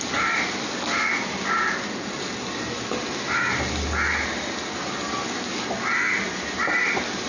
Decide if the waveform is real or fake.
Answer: real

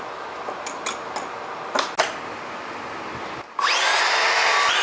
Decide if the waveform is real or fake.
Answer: real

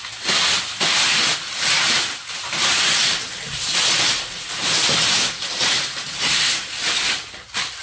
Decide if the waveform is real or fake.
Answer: real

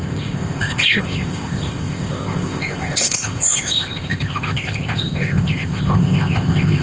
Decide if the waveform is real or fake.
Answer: fake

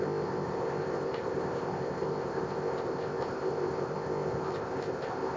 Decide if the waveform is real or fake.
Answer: fake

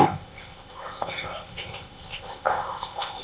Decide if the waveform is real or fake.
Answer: fake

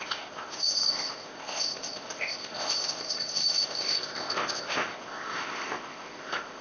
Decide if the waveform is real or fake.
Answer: fake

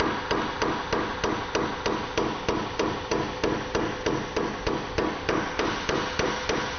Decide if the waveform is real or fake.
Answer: real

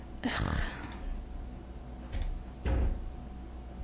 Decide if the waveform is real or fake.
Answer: real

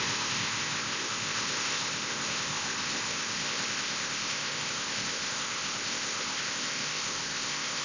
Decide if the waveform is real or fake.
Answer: fake